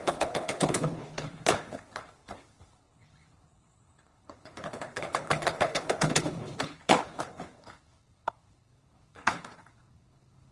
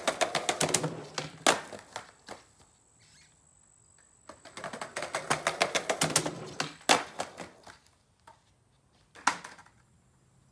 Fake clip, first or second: first